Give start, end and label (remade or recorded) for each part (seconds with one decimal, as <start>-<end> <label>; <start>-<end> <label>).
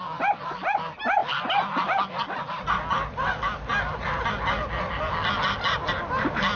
0.0-6.6 recorded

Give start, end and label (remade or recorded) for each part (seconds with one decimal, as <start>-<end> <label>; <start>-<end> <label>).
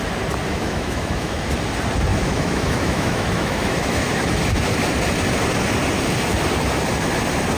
0.0-0.5 recorded; 0.5-1.4 remade; 1.4-2.1 recorded; 2.1-4.1 remade; 4.1-7.6 recorded